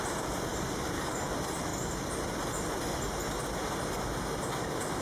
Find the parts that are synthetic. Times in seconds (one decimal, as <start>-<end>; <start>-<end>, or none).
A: 0.0-1.7